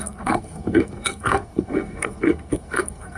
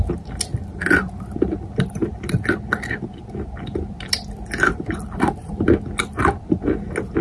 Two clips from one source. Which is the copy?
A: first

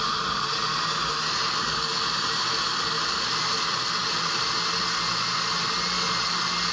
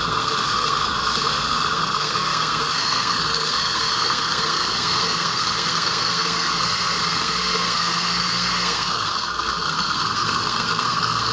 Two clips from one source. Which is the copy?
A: second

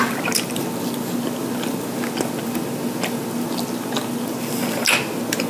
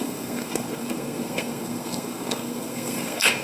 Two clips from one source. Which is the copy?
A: second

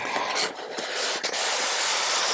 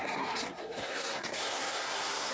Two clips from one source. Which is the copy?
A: second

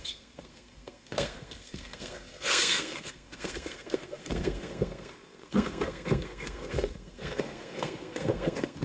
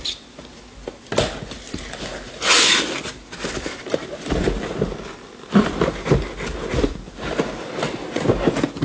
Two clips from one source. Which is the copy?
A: first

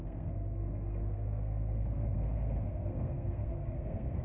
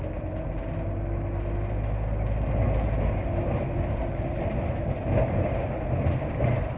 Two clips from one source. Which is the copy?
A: first